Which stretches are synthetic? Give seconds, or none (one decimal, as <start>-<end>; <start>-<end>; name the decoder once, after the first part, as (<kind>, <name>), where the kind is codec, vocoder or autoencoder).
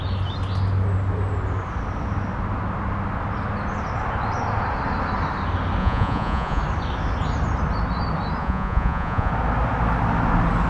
5.8-6.6 (vocoder, Vocos); 8.4-9.3